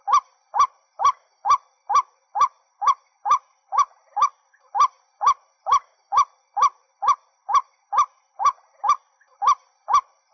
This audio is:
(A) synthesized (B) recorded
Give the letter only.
B